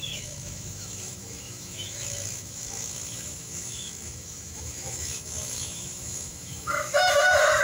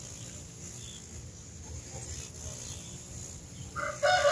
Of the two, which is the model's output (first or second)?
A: first